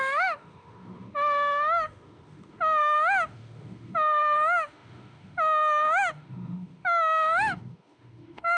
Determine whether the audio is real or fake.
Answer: fake